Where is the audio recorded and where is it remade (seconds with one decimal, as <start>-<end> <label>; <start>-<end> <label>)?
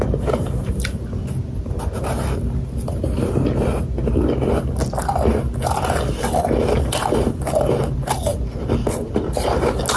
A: 0.0-8.3 recorded; 8.3-9.2 remade; 9.2-10.0 recorded